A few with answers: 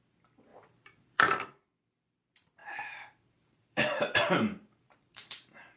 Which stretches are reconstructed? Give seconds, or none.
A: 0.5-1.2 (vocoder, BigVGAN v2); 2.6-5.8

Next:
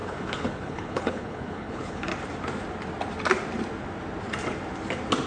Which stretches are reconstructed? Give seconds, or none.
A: 0.0-2.1 (codec, HILCodec)

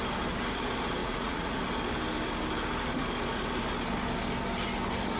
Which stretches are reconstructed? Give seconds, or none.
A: 1.0-1.6 (vocoder, Vocos)